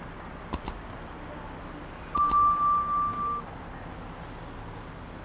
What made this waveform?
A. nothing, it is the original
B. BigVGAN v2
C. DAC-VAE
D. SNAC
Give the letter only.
A